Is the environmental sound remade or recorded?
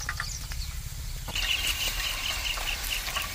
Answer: recorded